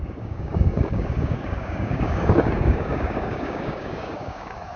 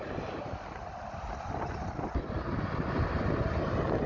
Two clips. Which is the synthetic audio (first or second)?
first